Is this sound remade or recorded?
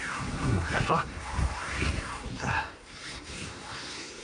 remade